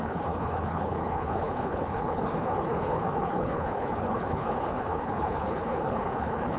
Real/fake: fake